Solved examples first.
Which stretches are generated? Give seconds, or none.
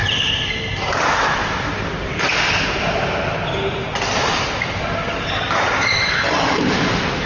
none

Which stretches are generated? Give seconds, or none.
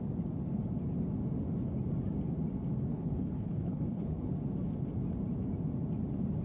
2.9-4.3 (codec, HILCodec)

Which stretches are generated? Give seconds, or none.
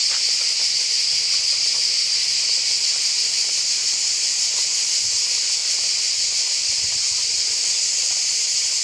none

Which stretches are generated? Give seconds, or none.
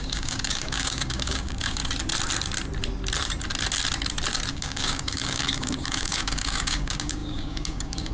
0.0-1.8 (codec, DAC); 4.5-8.1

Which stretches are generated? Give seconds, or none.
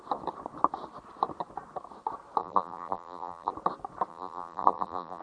2.4-3.5 (vocoder, BigVGAN v2); 4.1-5.2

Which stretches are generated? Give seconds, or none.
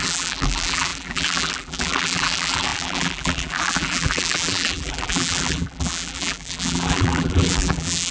0.0-8.1 (vocoder, BigVGAN v2)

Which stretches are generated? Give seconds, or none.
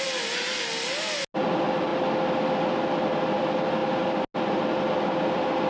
none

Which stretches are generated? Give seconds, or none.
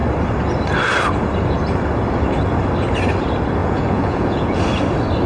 3.6-4.6 (vocoder, Vocos)